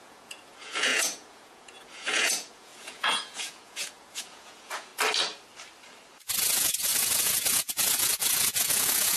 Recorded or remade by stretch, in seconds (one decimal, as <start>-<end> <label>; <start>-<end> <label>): 0.0-4.9 remade; 4.9-6.4 recorded; 6.4-9.2 remade